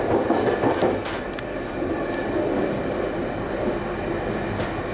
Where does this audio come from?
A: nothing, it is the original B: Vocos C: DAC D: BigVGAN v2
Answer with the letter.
A